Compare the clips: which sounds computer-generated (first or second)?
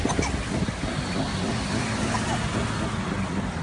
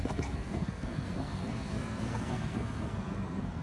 second